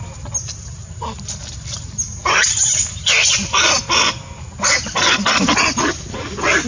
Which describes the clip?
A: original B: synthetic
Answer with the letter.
A